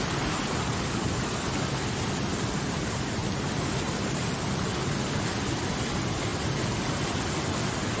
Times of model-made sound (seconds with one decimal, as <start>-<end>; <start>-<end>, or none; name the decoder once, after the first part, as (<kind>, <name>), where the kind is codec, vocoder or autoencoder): none